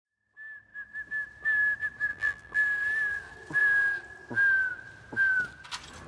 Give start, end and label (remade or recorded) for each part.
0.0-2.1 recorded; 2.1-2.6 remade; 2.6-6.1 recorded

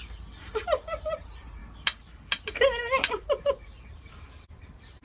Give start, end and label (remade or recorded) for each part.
0.0-5.0 recorded

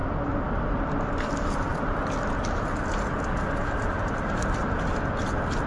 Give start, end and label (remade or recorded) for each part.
0.0-5.7 recorded

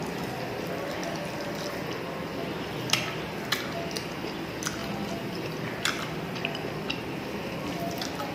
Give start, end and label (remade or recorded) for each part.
0.0-2.3 remade; 2.3-4.1 recorded; 4.1-8.3 remade

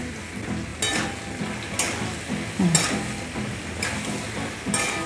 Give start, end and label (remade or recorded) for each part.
0.0-5.1 recorded

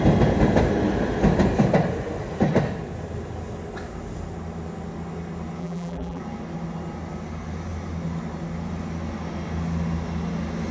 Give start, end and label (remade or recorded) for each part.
0.0-5.6 recorded; 5.6-6.2 remade; 6.2-10.7 recorded